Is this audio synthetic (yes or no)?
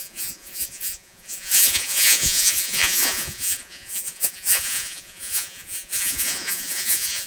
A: yes